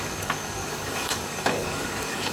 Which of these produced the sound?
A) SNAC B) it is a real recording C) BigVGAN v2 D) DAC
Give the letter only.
D